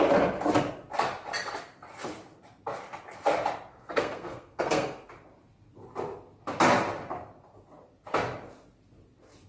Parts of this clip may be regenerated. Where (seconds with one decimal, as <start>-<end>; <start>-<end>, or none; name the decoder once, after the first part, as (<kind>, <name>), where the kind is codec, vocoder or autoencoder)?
3.7-5.1 (codec, SNAC)